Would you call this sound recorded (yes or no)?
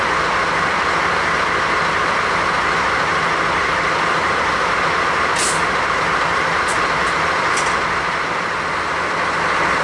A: yes